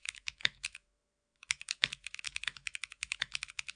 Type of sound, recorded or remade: remade